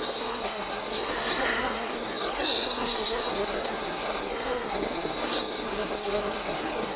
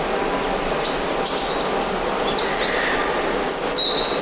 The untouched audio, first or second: second